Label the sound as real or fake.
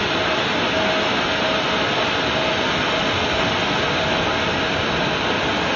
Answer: real